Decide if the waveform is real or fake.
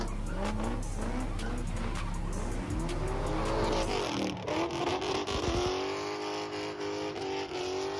real